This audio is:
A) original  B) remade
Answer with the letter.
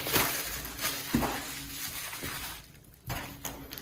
A